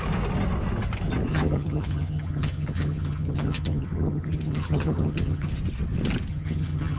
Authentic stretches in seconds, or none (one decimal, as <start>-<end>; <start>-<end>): 0.0-1.3; 5.5-6.3